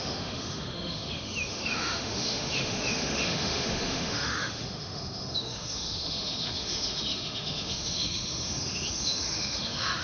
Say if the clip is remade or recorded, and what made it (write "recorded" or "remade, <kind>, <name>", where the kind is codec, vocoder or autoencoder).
remade, autoencoder, DAC-VAE